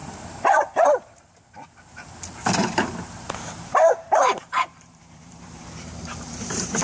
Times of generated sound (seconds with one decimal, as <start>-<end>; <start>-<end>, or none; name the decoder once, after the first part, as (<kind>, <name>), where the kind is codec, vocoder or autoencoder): 0.0-1.3 (vocoder, BigVGAN v2); 2.6-6.8